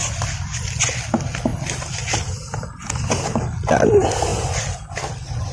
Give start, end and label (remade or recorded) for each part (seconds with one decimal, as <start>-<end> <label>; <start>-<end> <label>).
0.0-0.8 remade; 0.8-1.5 recorded; 1.5-2.9 remade; 2.9-5.5 recorded